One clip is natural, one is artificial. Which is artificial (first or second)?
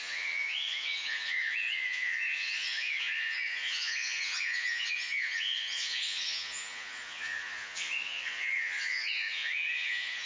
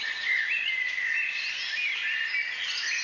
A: first